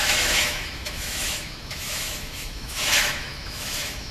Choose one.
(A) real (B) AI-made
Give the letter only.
B